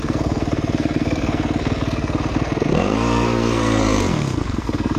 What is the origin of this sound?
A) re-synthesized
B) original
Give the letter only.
A